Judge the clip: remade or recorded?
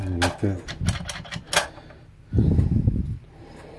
recorded